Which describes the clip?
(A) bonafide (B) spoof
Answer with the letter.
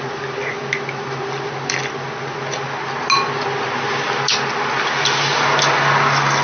A